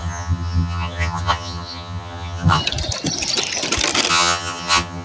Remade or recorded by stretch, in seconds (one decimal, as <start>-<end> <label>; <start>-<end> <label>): 0.0-2.6 remade; 2.6-4.1 recorded; 4.1-5.0 remade